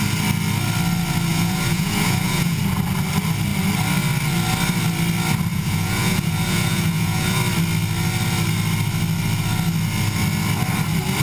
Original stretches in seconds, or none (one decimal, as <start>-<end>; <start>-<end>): 0.0-1.3; 2.6-5.5; 7.4-11.2